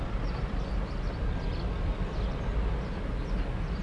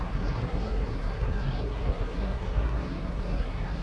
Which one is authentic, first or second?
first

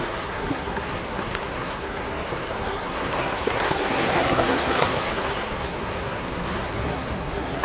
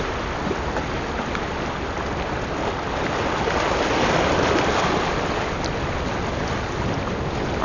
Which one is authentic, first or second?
second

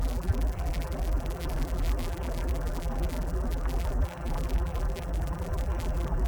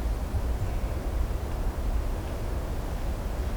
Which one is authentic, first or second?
second